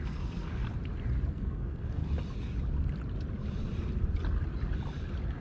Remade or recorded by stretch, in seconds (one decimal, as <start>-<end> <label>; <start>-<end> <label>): 0.0-0.6 remade; 0.6-1.3 recorded; 1.3-2.0 remade; 2.0-5.4 recorded